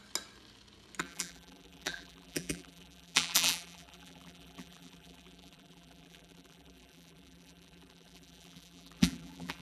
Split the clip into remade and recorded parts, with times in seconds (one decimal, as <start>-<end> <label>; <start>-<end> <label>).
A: 0.0-1.0 recorded; 1.0-9.6 remade